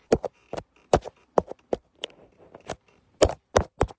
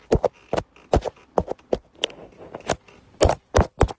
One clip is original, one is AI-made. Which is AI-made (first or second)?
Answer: first